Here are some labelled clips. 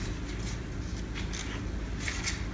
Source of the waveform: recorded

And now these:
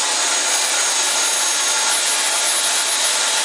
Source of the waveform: recorded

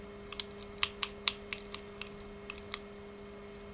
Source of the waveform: recorded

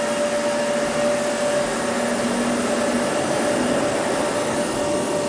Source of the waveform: recorded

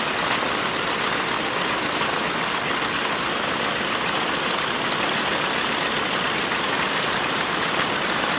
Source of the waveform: recorded